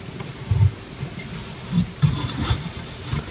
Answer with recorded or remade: recorded